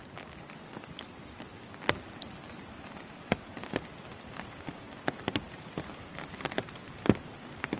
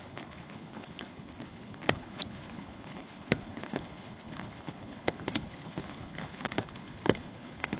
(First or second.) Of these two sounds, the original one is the first